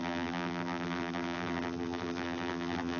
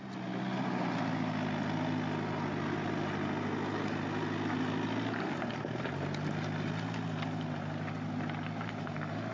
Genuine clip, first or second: second